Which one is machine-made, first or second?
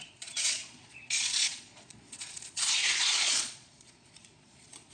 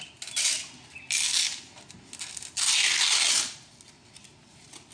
first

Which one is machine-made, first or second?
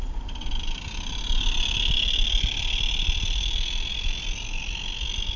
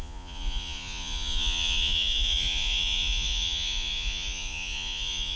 second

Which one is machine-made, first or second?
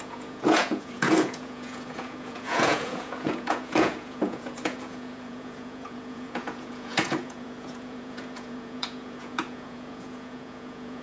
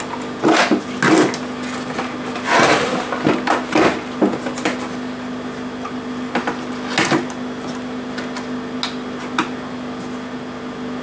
first